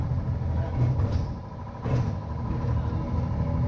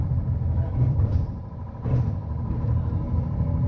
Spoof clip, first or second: second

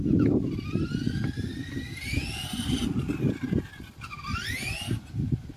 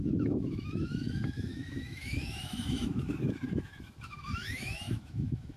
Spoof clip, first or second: second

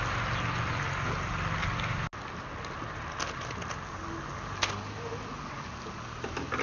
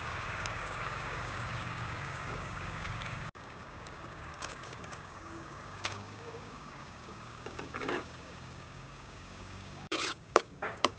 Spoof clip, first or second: second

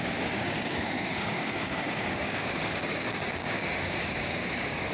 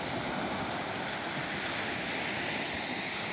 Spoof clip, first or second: first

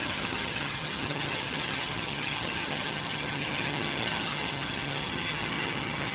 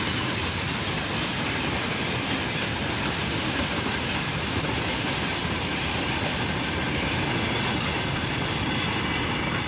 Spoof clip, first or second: first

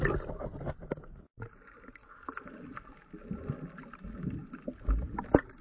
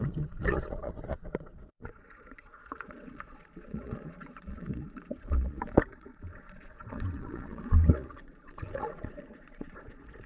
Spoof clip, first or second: second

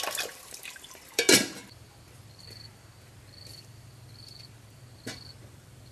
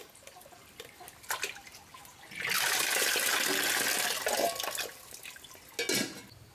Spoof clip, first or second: first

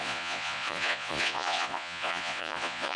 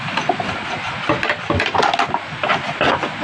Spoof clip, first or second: first